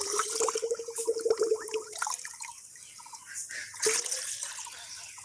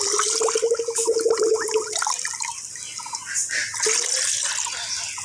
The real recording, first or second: second